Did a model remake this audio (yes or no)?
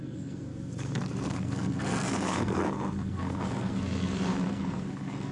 yes